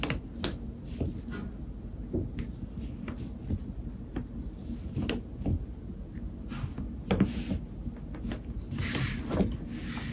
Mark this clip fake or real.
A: real